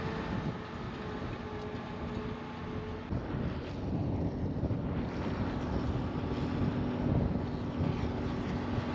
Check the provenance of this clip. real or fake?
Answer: real